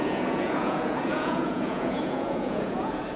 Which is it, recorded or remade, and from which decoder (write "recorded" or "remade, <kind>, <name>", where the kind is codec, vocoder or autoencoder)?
remade, vocoder, Vocos